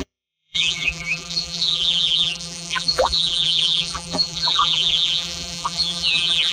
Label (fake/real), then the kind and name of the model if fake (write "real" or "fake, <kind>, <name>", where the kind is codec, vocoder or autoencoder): fake, vocoder, BigVGAN v2